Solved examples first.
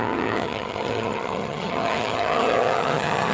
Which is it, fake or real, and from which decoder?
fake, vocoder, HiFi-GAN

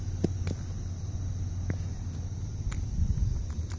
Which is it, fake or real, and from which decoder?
real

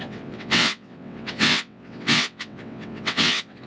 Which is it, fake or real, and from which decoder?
fake, vocoder, WaveNeXt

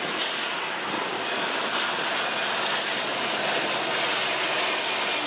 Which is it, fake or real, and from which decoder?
real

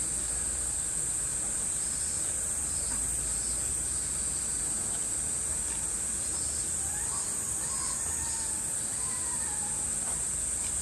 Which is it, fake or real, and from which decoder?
real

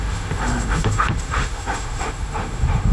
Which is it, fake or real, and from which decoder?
fake, autoencoder, DAC-VAE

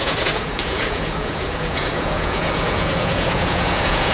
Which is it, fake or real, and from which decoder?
fake, vocoder, Vocos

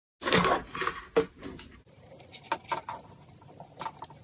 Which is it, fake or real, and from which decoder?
real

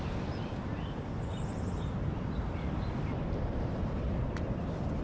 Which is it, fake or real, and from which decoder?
real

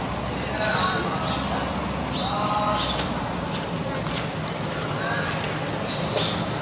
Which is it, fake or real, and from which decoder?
real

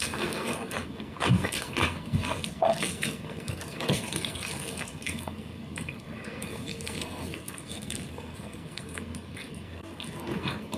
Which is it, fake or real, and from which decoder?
fake, codec, SNAC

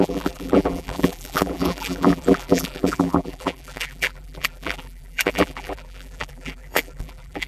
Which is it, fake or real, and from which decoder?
fake, vocoder, BigVGAN v2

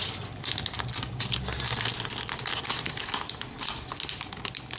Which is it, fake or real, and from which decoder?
real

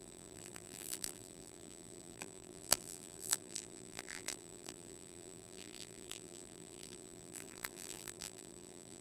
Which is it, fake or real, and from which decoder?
fake, vocoder, BigVGAN v2